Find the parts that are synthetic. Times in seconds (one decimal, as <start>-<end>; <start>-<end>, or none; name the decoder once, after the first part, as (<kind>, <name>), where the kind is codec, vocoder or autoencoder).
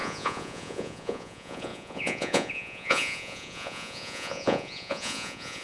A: 0.0-5.6 (vocoder, Vocos)